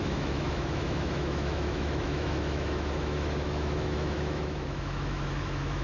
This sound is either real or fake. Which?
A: fake